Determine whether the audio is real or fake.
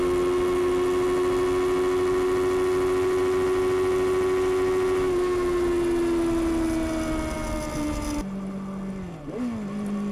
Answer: real